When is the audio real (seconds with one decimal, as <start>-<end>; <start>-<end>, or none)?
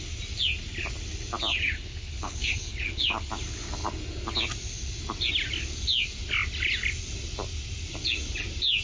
0.0-1.5; 3.3-8.8